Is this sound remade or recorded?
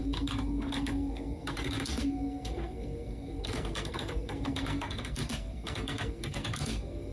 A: remade